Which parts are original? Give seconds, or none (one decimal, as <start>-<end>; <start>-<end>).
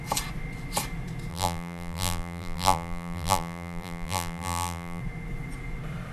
0.0-1.3; 5.0-6.1